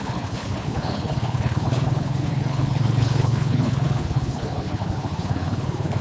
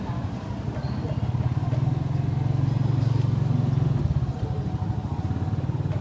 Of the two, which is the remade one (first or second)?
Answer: first